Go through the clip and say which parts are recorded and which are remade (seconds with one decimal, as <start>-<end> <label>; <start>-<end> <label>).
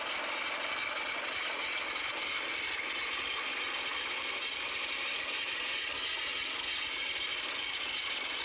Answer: 0.0-8.4 recorded